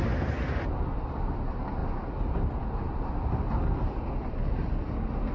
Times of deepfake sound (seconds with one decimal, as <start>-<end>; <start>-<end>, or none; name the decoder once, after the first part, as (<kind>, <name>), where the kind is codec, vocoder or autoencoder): none